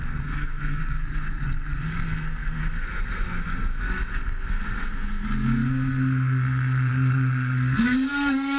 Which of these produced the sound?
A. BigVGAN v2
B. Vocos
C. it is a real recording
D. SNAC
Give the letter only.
D